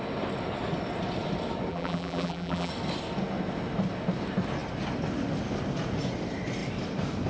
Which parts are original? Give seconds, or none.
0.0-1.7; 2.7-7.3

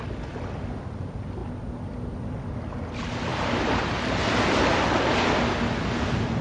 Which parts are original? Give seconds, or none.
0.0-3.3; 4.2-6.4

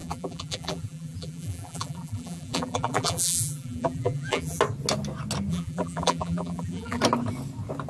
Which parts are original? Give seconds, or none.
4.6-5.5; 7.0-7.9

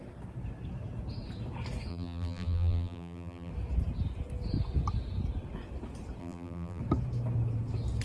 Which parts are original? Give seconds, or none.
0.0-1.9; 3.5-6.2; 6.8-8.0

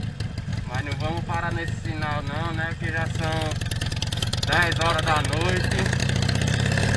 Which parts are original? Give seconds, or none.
0.0-7.0

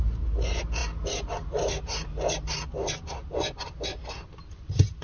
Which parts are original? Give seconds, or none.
0.0-5.0

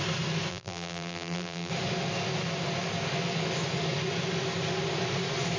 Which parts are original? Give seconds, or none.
0.0-0.5; 1.7-5.6

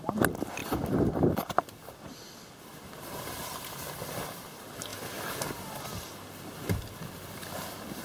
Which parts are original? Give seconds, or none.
4.9-6.1